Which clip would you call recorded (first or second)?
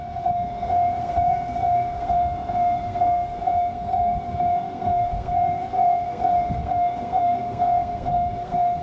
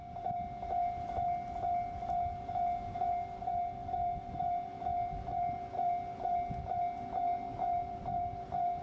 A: second